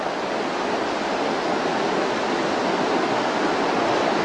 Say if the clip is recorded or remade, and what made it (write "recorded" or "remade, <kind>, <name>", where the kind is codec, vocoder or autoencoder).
recorded